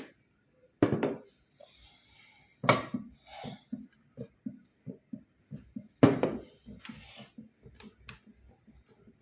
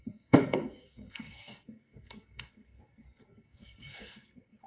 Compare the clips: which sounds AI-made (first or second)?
second